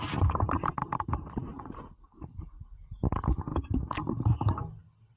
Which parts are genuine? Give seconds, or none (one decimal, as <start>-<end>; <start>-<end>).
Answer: 0.0-5.2